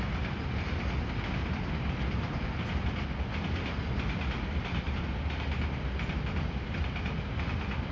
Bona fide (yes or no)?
yes